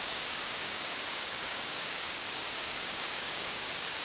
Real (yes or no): no